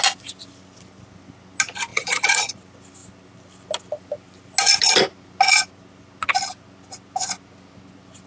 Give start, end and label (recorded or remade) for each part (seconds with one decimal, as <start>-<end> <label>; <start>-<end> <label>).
0.0-1.9 recorded; 1.9-2.6 remade; 2.6-8.3 recorded